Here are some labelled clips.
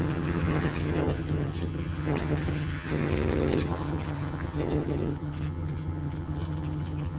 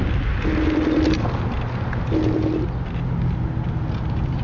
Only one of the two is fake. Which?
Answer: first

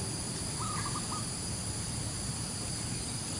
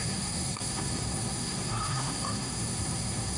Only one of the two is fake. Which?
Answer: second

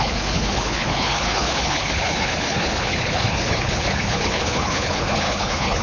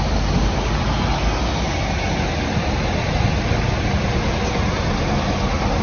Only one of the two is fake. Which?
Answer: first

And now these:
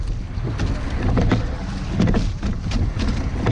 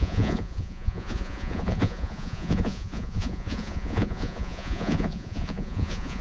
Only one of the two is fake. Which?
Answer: second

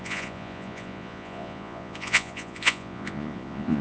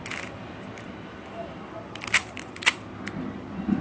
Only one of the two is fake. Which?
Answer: first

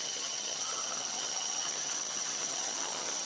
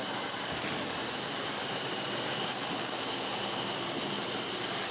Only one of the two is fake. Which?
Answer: first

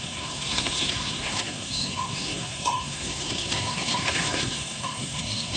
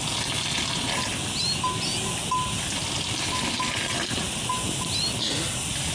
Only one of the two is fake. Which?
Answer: first